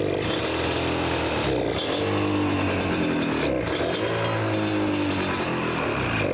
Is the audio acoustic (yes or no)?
yes